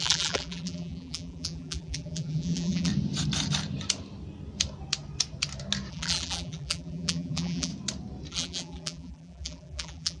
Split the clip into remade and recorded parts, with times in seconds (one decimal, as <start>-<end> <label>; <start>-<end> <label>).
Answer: 0.0-2.9 remade; 2.9-5.9 recorded; 5.9-7.7 remade; 7.7-8.3 recorded; 8.3-10.2 remade